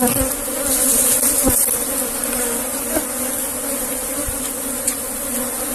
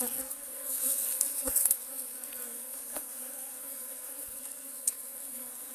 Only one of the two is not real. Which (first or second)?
second